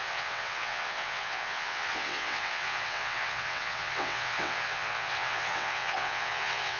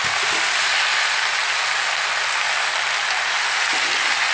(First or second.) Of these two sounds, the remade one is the first